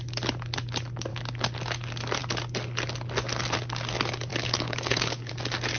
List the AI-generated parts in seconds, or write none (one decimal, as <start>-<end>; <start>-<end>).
4.3-5.3